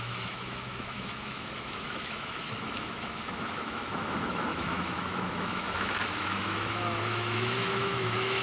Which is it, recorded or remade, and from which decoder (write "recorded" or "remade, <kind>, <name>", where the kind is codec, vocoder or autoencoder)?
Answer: remade, autoencoder, DAC-VAE